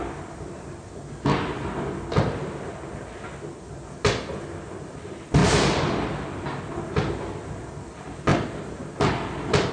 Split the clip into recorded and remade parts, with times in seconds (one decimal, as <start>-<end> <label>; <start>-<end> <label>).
0.0-9.7 recorded